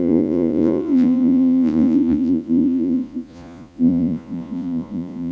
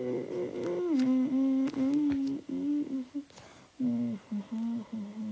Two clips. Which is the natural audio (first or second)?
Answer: second